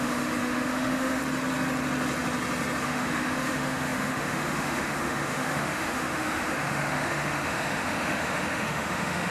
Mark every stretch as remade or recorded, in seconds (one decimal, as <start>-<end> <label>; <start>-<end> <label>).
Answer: 0.0-1.2 remade; 1.2-2.8 recorded; 2.8-9.3 remade